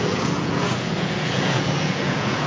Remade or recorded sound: remade